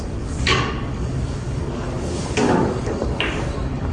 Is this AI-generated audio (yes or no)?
yes